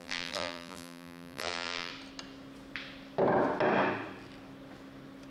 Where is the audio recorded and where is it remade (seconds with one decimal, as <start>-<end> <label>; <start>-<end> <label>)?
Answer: 0.0-1.9 remade; 1.9-5.3 recorded